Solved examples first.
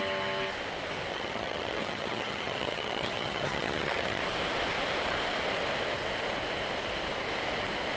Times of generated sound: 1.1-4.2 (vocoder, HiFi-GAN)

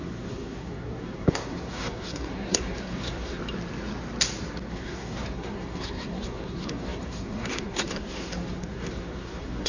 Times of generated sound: 0.0-3.4 (codec, SNAC); 4.7-9.7

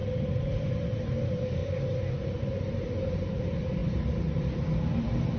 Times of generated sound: 0.0-1.6 (vocoder, BigVGAN v2); 2.7-5.4

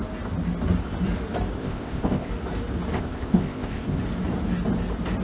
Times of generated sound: 1.6-2.3 (codec, ZipCodec); 2.9-4.0

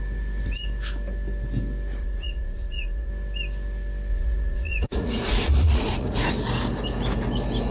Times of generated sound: 2.0-3.1 (vocoder, Vocos); 4.1-6.3